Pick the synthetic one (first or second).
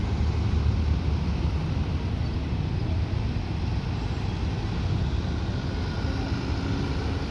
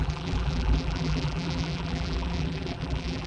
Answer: second